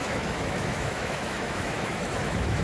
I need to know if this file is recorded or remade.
remade